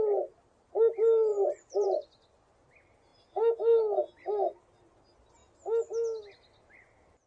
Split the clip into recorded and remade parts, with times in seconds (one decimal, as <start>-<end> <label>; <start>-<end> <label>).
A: 0.0-1.3 recorded; 1.3-2.5 remade; 2.5-7.3 recorded